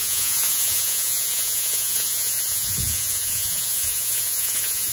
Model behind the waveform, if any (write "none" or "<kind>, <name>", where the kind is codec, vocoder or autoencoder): vocoder, Vocos